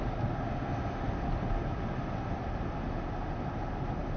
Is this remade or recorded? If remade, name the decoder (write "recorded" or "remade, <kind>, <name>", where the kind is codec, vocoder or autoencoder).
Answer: recorded